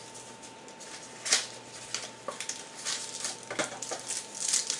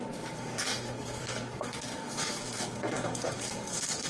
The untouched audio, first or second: first